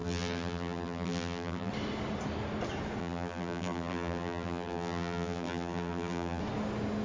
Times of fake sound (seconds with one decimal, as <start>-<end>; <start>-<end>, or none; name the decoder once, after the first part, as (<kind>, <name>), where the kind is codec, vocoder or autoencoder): 0.0-1.7 (vocoder, BigVGAN v2); 3.0-6.4